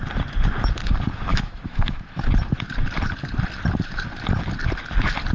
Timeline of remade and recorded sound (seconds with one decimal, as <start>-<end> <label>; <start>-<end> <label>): 0.0-1.3 recorded; 1.3-2.3 remade; 2.3-5.3 recorded